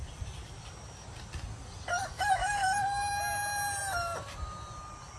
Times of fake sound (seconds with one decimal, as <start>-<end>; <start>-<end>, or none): 0.0-3.1